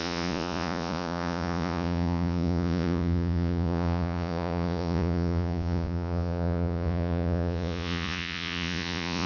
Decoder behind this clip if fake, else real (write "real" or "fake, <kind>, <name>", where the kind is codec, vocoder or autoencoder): fake, vocoder, Vocos